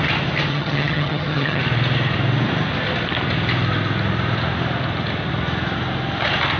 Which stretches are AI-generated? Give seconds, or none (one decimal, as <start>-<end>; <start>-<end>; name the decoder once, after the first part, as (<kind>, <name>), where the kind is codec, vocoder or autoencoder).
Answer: 0.5-1.6 (vocoder, HiFi-GAN)